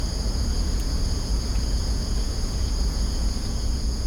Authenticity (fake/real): fake